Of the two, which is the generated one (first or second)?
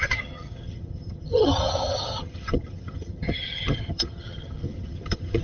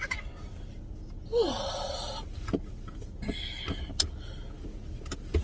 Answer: first